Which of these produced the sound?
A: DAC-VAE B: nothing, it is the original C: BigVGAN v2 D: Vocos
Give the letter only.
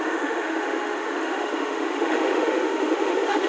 A